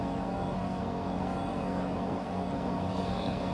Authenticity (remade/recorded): remade